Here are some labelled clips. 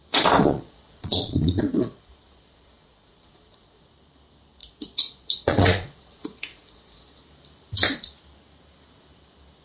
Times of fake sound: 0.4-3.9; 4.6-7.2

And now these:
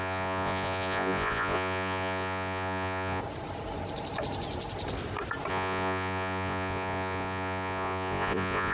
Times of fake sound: 0.0-3.2; 5.5-8.7

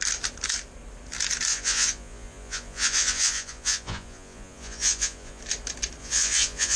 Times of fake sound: 1.5-5.4; 6.0-6.8

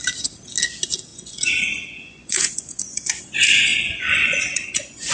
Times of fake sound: 1.1-3.2; 3.7-5.1

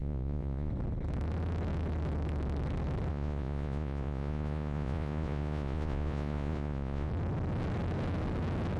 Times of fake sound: 0.0-0.7; 3.1-7.1